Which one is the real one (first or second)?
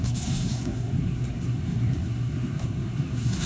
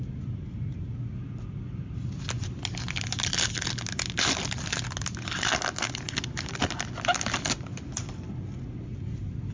second